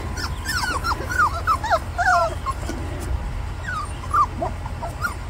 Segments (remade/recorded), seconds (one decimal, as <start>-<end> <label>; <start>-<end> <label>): 0.0-5.3 recorded